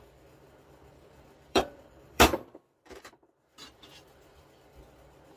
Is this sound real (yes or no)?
no